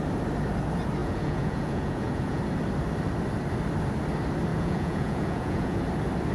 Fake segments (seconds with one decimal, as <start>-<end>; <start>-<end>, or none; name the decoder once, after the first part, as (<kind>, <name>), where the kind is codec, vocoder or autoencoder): 1.0-2.4 (vocoder, Vocos); 4.5-5.8